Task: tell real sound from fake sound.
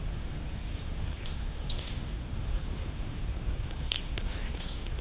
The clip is fake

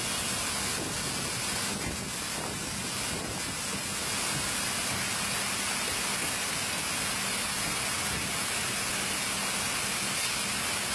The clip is real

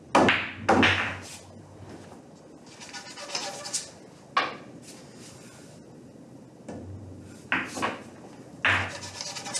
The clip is real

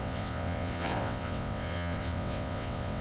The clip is fake